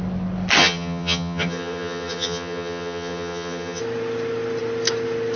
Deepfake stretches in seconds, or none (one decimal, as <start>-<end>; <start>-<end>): 0.6-3.8